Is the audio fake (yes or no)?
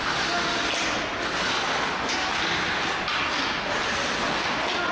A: no